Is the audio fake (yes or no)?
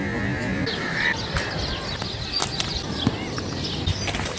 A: no